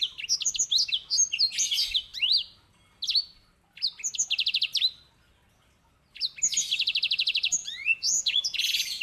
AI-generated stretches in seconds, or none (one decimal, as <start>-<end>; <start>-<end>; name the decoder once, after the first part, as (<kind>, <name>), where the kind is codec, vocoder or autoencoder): 7.6-9.0 (vocoder, Vocos)

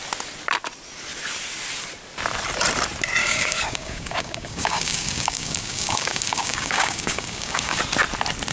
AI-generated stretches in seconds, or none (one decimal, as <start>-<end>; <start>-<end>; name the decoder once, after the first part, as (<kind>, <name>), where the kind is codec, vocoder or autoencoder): 3.2-7.8 (codec, DAC)

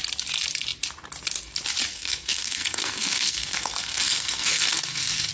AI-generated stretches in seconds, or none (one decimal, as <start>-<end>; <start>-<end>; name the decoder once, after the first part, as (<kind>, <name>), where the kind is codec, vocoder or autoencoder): 1.9-5.3 (codec, SNAC)

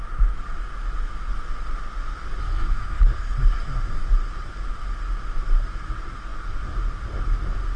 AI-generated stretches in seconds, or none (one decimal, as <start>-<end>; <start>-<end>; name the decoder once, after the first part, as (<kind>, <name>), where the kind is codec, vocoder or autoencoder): 2.4-3.0 (codec, SNAC)

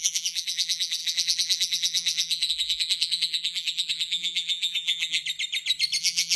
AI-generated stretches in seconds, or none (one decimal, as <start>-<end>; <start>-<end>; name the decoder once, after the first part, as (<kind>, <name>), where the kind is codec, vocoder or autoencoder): 0.0-5.2 (vocoder, BigVGAN v2); 6.0-6.4

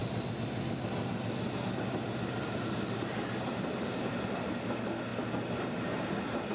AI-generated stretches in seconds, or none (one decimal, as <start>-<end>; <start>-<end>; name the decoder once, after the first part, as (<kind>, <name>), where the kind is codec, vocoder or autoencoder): none

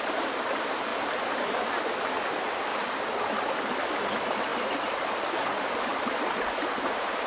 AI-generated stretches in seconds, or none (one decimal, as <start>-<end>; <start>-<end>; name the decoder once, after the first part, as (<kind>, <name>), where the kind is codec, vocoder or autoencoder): 0.0-2.7 (vocoder, BigVGAN v2); 3.9-4.5; 5.3-5.9

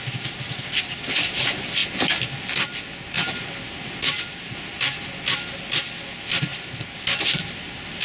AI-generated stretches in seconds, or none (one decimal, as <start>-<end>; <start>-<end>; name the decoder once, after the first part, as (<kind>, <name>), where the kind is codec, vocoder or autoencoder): none